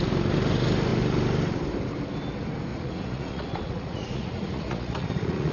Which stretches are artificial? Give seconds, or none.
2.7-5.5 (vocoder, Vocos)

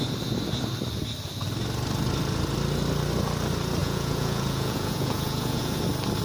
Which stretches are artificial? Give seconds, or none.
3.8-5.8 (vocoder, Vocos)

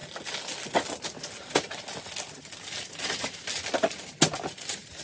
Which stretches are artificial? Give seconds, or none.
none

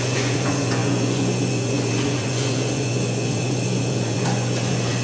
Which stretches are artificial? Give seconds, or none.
0.0-5.0 (vocoder, Vocos)

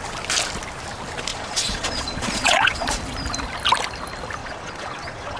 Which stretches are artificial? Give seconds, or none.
1.3-3.0 (vocoder, Vocos); 4.4-5.4